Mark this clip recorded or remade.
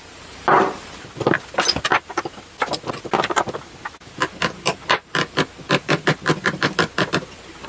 recorded